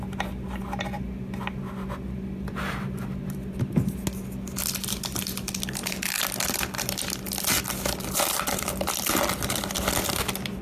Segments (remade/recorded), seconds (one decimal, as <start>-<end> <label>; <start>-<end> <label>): 0.0-10.6 recorded